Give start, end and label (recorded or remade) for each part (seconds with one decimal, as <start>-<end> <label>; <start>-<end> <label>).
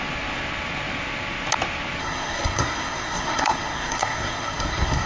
0.0-2.0 recorded; 2.0-5.1 remade